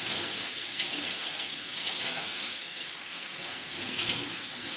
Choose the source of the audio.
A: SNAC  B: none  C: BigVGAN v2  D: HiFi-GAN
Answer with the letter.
A